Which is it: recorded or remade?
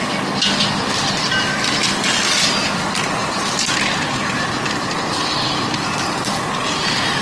recorded